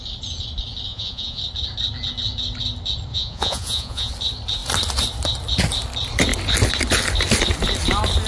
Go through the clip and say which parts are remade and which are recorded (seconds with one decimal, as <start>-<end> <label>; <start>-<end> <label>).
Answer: 0.0-0.9 recorded; 0.9-1.4 remade; 1.4-3.1 recorded; 3.1-4.1 remade; 4.1-8.3 recorded